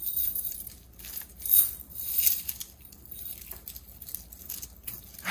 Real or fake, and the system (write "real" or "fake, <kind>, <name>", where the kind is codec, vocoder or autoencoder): real